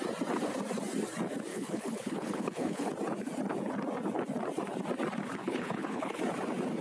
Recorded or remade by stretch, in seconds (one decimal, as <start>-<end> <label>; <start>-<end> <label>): 0.0-1.5 recorded; 1.5-2.9 remade; 2.9-5.4 recorded; 5.4-6.2 remade; 6.2-6.8 recorded